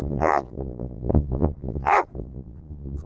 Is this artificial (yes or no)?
yes